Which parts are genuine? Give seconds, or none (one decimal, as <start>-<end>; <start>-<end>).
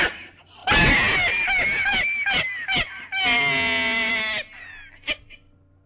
0.0-5.9